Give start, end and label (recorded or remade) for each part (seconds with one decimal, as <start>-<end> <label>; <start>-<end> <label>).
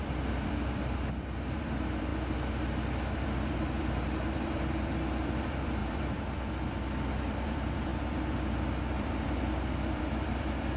0.0-2.1 remade; 2.1-3.1 recorded; 3.1-10.8 remade